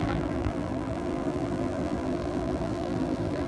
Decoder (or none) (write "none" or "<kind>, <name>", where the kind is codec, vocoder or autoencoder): vocoder, BigVGAN v2